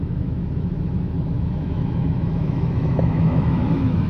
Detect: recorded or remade remade